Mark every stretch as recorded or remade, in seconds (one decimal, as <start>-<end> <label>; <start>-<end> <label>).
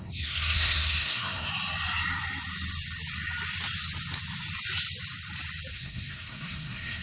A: 0.0-1.5 remade; 1.5-5.7 recorded; 5.7-7.0 remade